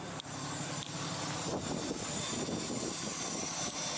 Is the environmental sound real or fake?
real